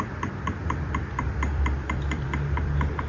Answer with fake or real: fake